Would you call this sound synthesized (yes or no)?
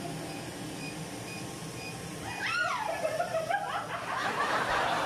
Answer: yes